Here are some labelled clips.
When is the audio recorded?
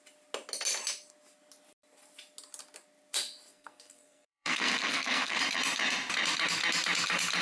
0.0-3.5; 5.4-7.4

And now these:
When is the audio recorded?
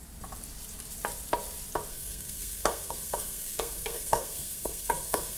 0.0-1.9